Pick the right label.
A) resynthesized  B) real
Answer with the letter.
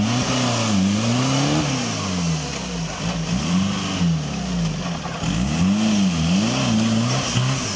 B